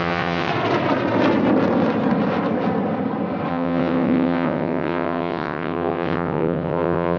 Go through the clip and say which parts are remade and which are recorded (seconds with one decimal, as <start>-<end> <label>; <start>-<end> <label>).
0.0-0.5 remade; 0.5-3.5 recorded; 3.5-7.2 remade